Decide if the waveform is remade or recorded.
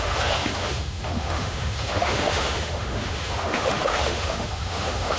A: remade